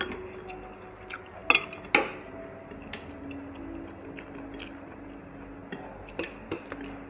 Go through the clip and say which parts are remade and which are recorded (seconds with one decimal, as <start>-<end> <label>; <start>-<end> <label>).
0.0-7.1 recorded